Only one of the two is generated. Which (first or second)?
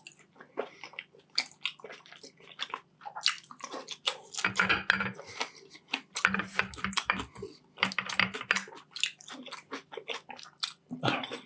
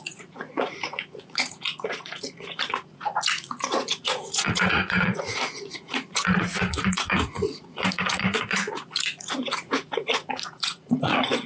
second